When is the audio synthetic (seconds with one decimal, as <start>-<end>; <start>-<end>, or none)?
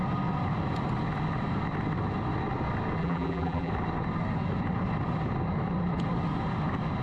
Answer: 3.0-3.7